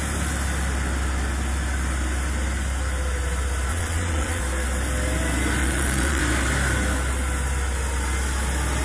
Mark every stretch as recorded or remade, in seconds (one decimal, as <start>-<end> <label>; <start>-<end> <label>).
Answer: 0.0-3.7 recorded; 3.7-4.4 remade; 4.4-5.6 recorded; 5.6-6.2 remade; 6.2-8.8 recorded